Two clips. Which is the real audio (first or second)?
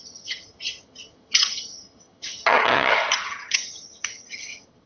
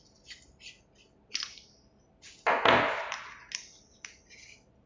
second